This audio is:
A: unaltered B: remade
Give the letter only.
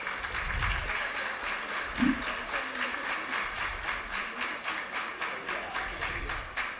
A